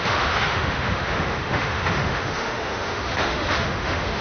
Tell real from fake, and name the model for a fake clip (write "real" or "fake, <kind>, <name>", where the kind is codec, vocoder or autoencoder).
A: fake, autoencoder, DAC-VAE